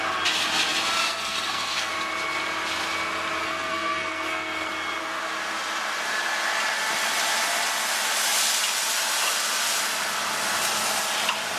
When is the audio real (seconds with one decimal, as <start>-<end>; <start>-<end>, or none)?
0.0-1.0; 1.9-3.4; 4.7-11.6